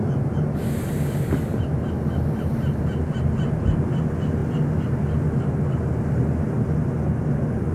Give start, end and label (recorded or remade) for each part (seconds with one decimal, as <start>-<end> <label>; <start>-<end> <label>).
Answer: 0.0-7.7 recorded